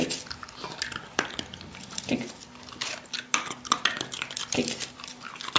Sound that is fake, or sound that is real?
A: real